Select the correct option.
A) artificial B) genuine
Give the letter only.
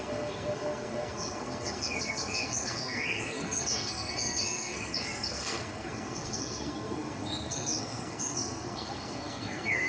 A